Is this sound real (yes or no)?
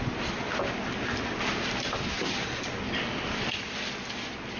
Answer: yes